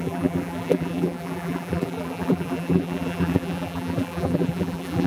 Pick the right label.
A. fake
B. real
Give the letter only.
A